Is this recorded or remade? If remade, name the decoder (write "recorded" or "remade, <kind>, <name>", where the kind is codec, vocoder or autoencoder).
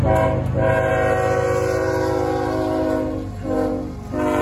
recorded